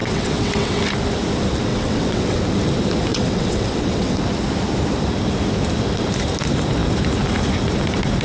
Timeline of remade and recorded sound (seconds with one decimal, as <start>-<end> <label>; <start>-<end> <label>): 0.0-0.8 remade; 0.8-1.7 recorded; 1.7-2.4 remade; 2.4-3.1 recorded; 3.1-4.2 remade; 4.2-8.2 recorded